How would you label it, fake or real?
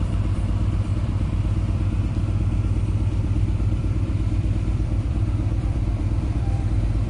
fake